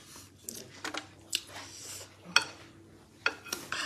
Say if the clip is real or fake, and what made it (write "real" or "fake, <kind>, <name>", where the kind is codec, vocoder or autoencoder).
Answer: real